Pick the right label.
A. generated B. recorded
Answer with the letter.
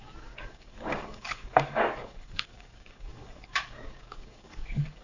A